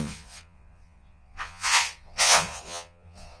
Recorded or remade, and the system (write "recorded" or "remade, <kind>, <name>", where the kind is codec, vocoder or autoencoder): remade, vocoder, Vocos